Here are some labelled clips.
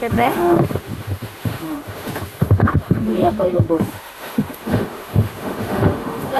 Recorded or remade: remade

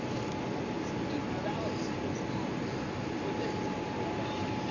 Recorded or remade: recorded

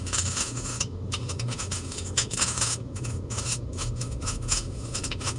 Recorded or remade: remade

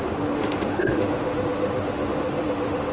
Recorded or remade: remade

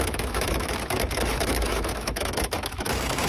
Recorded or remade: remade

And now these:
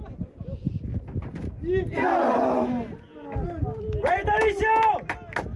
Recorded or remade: recorded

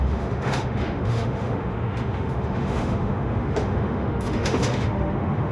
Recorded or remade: remade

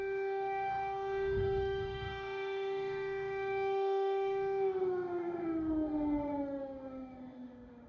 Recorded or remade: remade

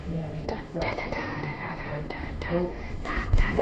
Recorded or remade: remade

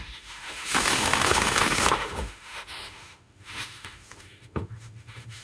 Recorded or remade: remade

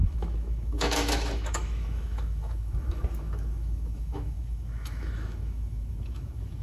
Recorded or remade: remade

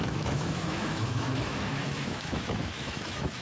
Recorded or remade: remade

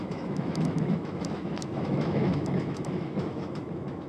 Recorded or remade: remade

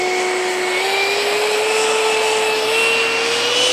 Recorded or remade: recorded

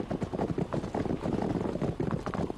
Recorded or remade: recorded